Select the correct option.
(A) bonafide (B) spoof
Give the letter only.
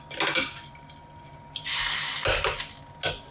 A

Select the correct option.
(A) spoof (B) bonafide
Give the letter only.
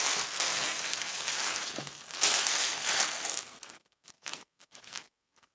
A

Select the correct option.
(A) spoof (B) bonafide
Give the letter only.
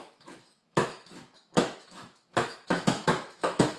A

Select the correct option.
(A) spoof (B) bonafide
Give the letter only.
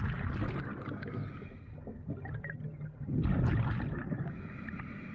B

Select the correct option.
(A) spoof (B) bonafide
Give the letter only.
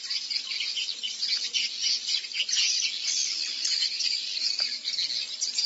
B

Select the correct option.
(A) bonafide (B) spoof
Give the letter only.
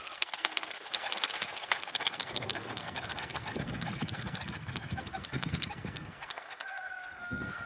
B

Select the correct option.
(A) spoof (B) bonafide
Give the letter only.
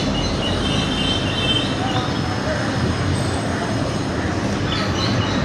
B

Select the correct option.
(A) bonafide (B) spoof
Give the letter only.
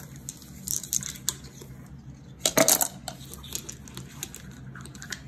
A